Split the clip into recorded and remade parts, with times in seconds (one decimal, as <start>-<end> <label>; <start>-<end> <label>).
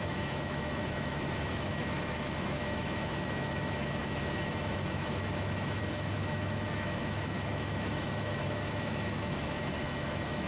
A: 0.0-10.5 remade